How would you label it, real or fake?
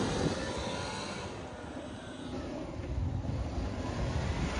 real